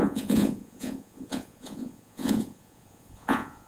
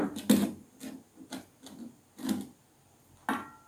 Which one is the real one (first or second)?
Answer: second